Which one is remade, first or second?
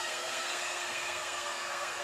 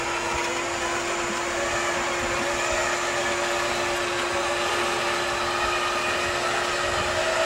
first